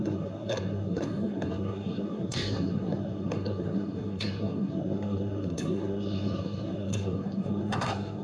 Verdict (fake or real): fake